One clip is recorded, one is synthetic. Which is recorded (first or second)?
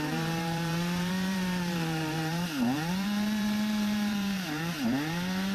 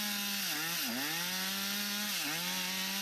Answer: second